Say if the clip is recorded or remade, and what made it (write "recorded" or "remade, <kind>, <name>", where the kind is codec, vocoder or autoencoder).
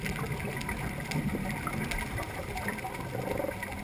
recorded